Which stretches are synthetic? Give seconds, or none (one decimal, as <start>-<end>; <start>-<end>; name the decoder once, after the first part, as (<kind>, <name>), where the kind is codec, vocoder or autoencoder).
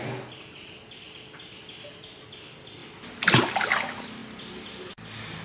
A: none